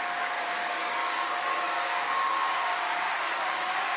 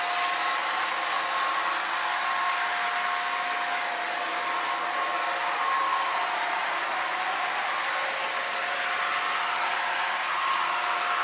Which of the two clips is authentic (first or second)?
second